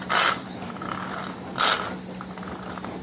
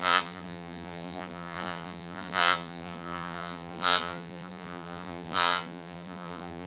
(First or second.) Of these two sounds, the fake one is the second